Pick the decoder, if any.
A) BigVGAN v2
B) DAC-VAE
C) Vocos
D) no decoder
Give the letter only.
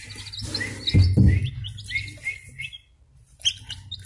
D